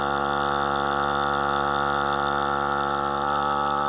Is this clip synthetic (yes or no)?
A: no